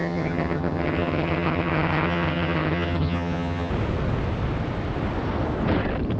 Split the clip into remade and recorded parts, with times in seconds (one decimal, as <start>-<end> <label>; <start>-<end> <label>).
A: 0.0-3.7 remade; 3.7-6.2 recorded